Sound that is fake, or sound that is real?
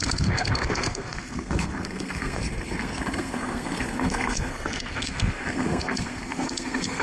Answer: fake